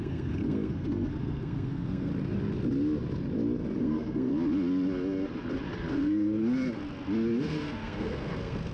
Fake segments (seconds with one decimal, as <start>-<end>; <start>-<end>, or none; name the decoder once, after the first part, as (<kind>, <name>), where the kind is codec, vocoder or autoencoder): 0.0-2.1 (codec, SNAC); 3.8-4.3; 5.9-6.4; 7.4-8.7